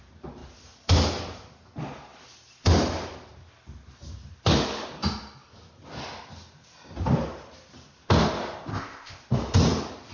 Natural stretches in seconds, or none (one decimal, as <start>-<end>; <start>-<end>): 0.0-8.7; 9.2-10.1